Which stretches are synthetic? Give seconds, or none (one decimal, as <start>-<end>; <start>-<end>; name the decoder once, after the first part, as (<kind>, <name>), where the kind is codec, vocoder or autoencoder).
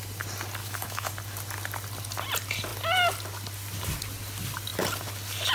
0.6-1.1 (autoencoder, DAC-VAE)